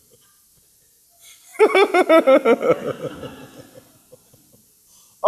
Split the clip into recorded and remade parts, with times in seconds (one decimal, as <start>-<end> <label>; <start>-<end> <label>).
0.0-5.3 recorded